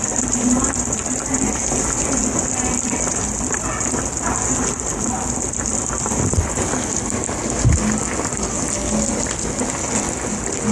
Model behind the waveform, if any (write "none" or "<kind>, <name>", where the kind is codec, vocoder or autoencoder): none